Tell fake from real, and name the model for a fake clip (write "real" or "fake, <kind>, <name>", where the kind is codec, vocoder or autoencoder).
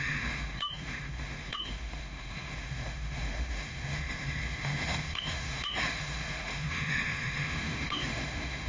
fake, autoencoder, DAC-VAE